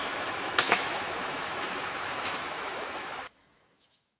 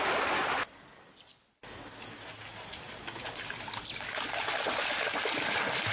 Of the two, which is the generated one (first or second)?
first